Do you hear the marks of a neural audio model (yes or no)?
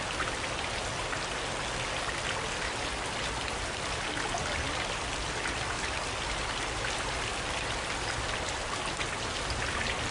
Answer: no